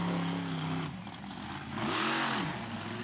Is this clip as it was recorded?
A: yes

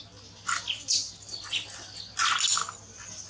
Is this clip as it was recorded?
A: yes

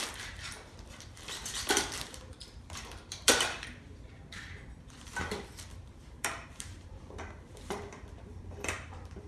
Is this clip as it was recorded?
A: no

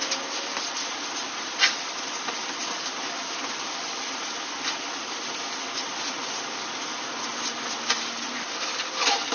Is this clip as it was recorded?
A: yes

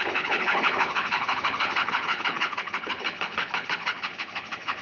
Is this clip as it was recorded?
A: no